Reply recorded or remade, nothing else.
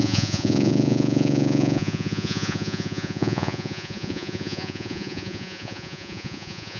remade